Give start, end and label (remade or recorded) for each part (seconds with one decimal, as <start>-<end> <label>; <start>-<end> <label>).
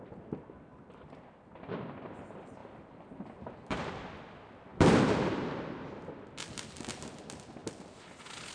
0.0-0.7 recorded; 0.7-2.2 remade; 2.2-2.6 recorded; 2.6-3.8 remade; 3.8-4.7 recorded; 4.7-7.1 remade; 7.1-8.5 recorded